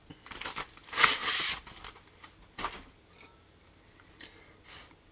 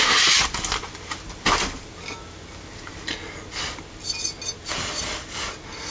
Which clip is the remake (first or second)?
first